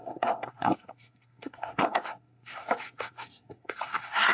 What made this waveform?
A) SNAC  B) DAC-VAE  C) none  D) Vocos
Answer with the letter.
A